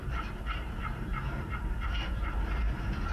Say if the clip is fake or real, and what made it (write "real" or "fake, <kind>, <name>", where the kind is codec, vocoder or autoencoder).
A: fake, vocoder, BigVGAN v2